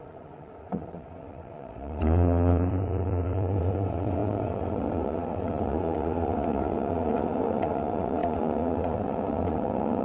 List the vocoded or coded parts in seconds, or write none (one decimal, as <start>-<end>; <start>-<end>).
0.0-10.0